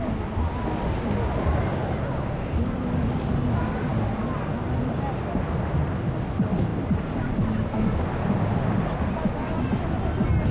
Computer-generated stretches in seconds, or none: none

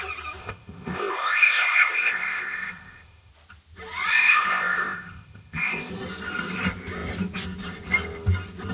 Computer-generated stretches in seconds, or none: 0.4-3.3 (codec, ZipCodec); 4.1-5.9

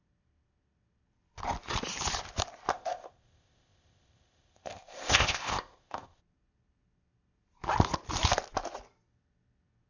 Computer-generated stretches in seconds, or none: 2.7-6.2 (codec, ZipCodec)